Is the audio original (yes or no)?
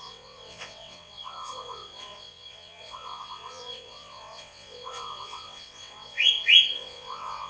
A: no